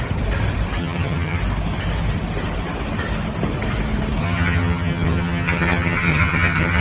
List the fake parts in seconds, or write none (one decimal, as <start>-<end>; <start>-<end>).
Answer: 0.8-1.4; 4.2-6.8